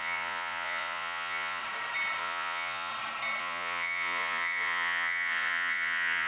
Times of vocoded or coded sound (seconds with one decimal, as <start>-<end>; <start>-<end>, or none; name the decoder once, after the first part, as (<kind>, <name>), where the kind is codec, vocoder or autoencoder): 0.0-1.6 (vocoder, Vocos); 2.2-2.9; 3.4-6.3